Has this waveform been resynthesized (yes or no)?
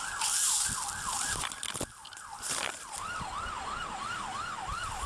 no